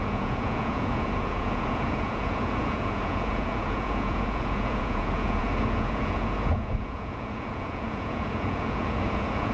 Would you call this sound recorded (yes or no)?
no